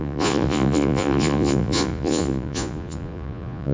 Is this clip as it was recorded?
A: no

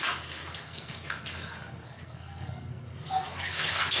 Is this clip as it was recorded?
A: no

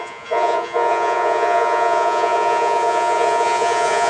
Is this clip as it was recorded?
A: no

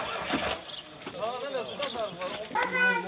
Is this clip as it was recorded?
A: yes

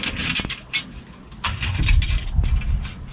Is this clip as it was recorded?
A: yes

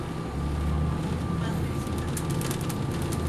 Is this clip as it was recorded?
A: yes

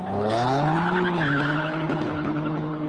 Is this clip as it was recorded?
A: no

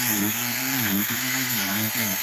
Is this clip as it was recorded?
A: no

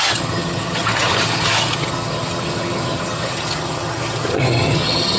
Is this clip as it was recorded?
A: no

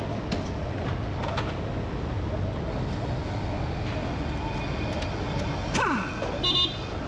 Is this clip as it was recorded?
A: yes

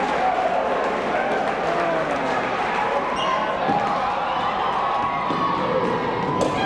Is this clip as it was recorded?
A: yes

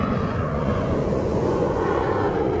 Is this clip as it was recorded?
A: no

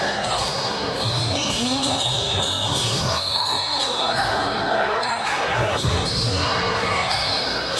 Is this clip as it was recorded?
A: no